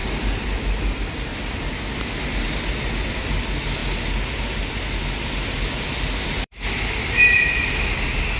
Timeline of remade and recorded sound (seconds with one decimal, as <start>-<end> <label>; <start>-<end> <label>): 0.0-1.3 remade; 1.3-2.7 recorded; 2.7-3.8 remade; 3.8-5.3 recorded; 5.3-8.4 remade